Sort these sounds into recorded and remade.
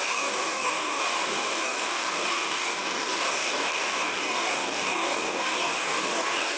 remade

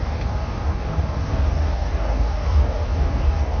remade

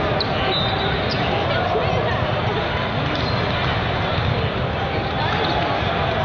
recorded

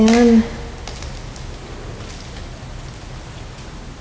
recorded